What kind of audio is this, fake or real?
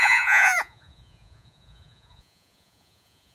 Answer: fake